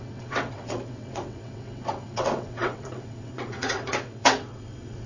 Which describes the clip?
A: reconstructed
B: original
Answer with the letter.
A